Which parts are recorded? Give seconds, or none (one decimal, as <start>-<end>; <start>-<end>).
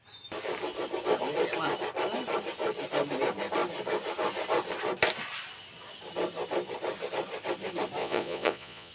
0.0-8.0